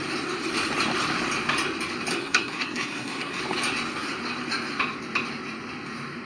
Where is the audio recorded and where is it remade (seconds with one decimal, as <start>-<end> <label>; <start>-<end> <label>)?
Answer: 0.0-2.1 recorded; 2.1-3.4 remade; 3.4-6.2 recorded